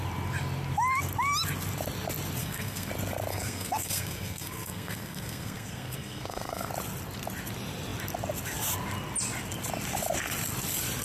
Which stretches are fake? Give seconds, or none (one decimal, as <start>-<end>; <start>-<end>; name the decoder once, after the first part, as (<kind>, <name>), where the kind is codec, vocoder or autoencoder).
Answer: 2.4-2.9 (codec, SNAC); 3.3-6.7